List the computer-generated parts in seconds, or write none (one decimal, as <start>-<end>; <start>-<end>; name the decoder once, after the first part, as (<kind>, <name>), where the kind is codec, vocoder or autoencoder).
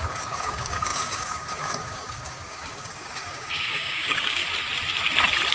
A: 0.0-4.4 (codec, DAC)